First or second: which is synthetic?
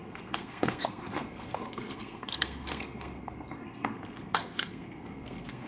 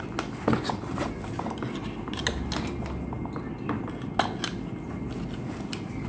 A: first